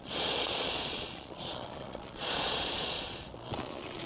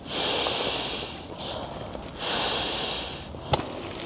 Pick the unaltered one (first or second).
second